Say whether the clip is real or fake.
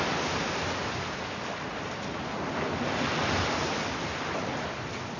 real